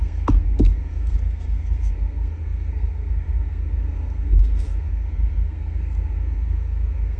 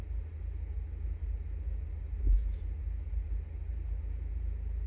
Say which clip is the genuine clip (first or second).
second